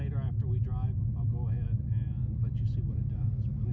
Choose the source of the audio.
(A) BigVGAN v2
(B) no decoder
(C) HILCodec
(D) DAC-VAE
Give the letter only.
B